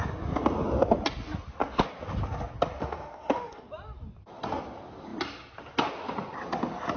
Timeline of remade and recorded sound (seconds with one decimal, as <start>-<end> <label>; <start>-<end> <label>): 0.0-2.8 recorded; 2.8-3.7 remade; 3.7-7.0 recorded